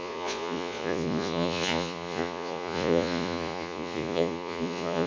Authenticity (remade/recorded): remade